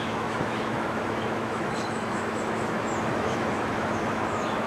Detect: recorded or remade remade